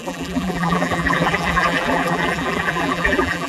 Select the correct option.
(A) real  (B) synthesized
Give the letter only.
B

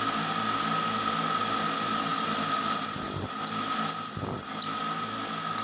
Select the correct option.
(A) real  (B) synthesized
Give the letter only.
A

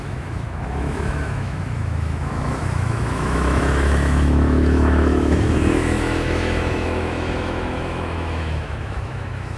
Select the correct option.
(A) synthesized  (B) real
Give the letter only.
A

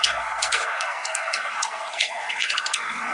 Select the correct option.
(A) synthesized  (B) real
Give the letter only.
A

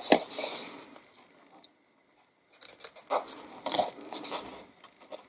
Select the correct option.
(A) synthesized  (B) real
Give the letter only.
B